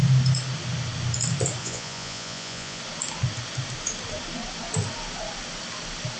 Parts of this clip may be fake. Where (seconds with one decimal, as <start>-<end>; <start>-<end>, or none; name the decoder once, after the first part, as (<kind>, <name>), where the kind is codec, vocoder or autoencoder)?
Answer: 1.6-2.8 (vocoder, Vocos)